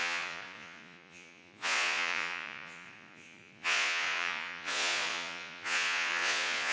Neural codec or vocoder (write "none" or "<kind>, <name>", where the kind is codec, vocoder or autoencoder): vocoder, Vocos